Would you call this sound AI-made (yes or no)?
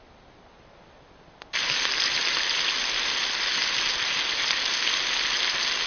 no